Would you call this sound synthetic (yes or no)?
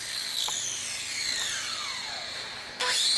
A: no